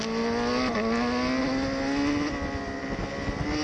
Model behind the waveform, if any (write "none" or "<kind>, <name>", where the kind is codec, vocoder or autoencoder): none